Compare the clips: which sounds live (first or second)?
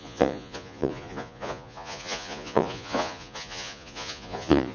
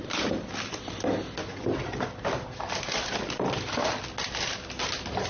second